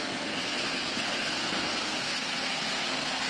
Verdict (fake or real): fake